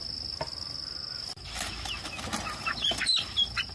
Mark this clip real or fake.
real